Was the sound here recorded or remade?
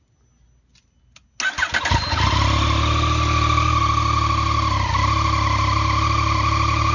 recorded